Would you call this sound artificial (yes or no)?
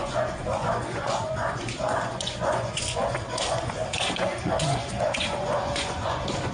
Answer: yes